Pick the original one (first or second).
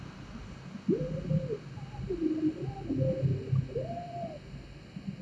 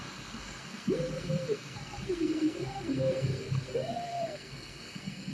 first